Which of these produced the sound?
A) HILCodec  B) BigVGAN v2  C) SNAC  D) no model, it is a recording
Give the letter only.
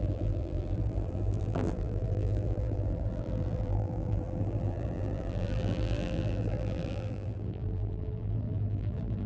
B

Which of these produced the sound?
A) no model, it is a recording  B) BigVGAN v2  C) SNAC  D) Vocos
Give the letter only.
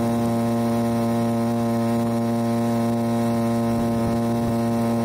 A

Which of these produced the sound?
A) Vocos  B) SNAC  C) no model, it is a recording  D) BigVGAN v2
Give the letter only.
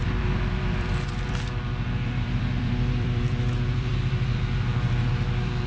D